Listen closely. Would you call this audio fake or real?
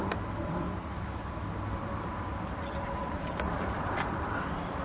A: fake